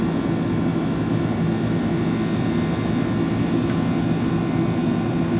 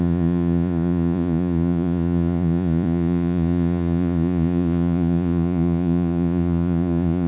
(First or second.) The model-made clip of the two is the second